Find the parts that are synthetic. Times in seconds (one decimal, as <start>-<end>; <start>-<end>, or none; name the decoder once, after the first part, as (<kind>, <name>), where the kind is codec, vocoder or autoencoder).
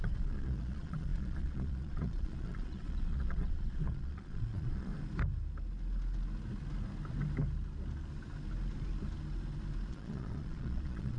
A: 0.0-4.9 (vocoder, Vocos); 9.9-11.2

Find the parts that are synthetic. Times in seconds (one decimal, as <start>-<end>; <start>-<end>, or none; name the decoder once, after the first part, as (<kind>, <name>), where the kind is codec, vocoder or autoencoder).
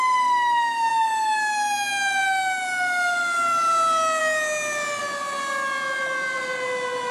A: none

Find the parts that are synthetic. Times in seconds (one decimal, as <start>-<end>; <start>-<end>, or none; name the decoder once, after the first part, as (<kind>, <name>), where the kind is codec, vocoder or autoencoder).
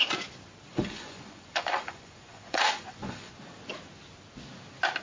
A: 0.7-3.3 (vocoder, Vocos)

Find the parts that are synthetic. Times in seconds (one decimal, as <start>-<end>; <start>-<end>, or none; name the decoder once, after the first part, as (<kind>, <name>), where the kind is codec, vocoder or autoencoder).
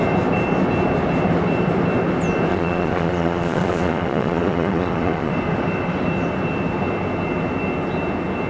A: 2.5-5.3 (vocoder, Vocos)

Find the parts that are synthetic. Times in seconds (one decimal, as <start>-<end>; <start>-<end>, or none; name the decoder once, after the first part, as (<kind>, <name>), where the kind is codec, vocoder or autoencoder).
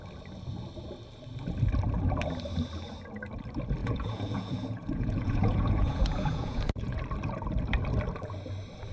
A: 3.8-7.0 (vocoder, Vocos)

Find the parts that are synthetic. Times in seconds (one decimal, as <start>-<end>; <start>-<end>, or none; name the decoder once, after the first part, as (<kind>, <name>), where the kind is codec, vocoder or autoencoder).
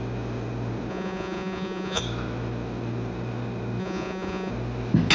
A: 0.9-2.0 (vocoder, Vocos); 3.8-4.5